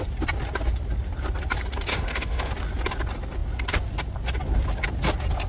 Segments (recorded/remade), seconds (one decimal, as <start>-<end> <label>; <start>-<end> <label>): 0.0-1.9 recorded; 1.9-2.5 remade; 2.5-5.5 recorded